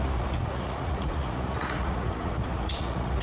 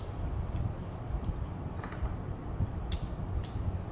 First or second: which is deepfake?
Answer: first